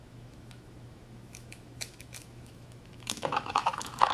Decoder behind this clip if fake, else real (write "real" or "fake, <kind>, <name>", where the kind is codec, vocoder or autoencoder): fake, autoencoder, DAC-VAE